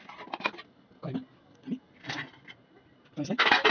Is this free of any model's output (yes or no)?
yes